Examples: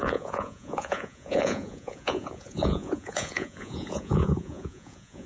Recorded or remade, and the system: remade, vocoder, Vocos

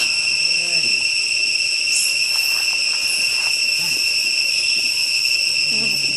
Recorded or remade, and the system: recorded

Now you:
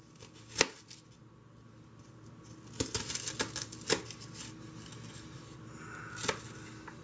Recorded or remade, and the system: recorded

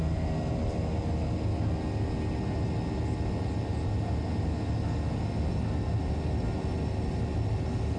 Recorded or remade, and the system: recorded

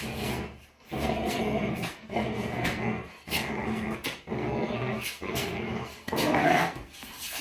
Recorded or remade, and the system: remade, codec, SNAC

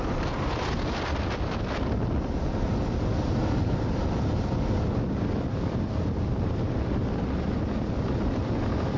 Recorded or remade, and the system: recorded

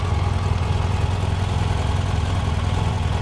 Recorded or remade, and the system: remade, vocoder, Vocos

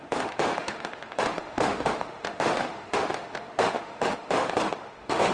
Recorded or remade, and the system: remade, autoencoder, DAC-VAE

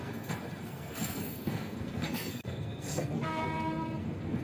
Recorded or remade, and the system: remade, codec, SNAC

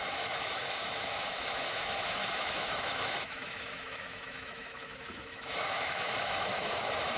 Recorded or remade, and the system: remade, autoencoder, DAC-VAE